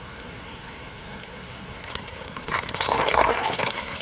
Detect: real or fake fake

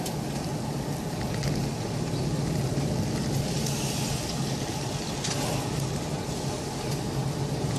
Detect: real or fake real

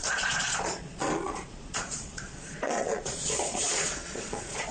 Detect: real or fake fake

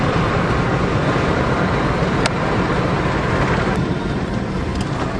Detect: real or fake real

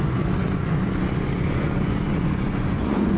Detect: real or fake fake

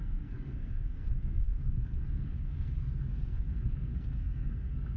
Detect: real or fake fake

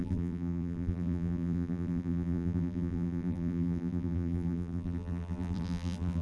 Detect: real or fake fake